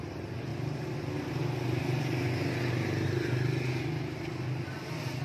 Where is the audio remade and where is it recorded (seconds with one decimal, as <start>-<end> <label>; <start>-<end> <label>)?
0.0-5.2 recorded